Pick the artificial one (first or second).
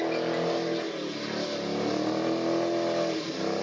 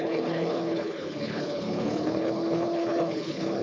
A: second